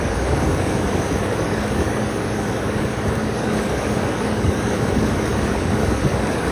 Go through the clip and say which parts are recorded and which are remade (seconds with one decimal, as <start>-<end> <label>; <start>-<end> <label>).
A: 0.0-6.5 remade